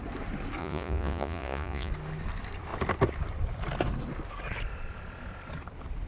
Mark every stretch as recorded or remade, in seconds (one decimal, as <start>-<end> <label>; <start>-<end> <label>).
0.0-0.6 recorded; 0.6-1.9 remade; 1.9-6.1 recorded